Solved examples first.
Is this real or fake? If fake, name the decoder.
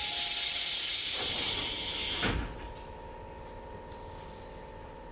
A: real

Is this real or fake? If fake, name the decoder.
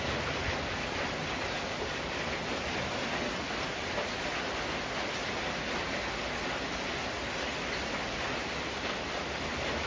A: real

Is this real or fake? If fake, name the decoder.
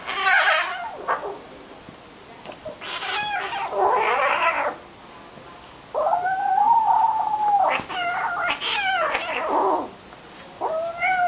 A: real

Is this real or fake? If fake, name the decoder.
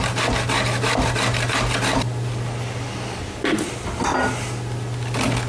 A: real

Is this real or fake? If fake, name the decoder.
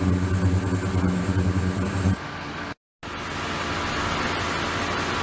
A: real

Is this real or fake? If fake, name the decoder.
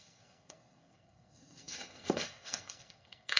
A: fake, codec, SNAC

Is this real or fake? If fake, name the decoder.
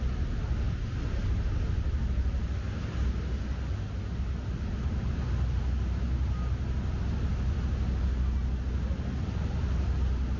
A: real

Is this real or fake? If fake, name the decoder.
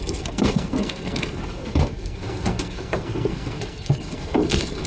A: fake, codec, SNAC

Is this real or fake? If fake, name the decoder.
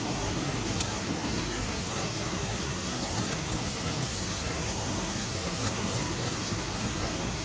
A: fake, codec, SNAC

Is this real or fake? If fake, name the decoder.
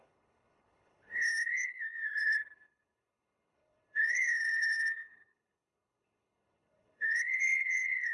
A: fake, codec, HILCodec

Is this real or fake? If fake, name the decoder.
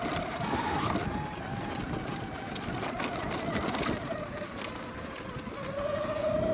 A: real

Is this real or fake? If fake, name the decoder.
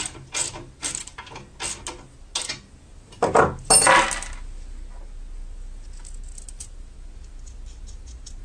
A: real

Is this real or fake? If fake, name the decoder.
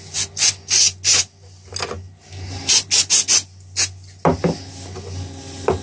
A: real